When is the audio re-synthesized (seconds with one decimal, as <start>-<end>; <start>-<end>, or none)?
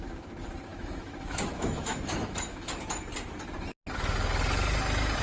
0.7-2.8